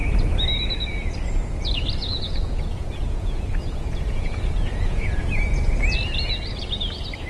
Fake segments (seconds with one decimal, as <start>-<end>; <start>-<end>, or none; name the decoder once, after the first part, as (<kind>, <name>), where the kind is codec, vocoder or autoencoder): 2.0-5.2 (vocoder, Vocos)